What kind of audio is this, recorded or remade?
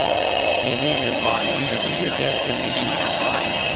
remade